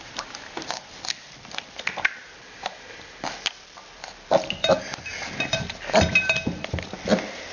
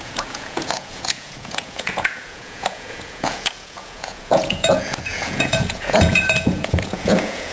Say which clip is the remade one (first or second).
second